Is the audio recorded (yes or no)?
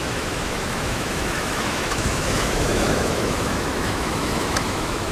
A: no